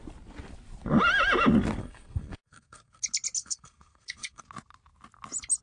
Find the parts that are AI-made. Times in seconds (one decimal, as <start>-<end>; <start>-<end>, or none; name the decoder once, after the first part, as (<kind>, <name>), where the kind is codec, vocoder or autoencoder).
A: 1.8-3.0 (codec, SNAC); 3.4-4.4